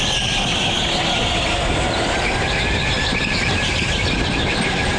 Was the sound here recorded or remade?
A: recorded